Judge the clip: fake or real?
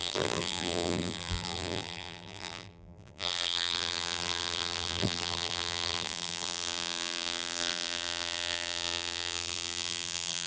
fake